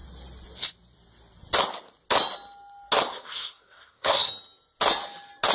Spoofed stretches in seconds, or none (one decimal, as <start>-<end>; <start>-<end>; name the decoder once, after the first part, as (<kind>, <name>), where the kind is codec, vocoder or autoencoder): 3.1-4.3 (codec, SNAC)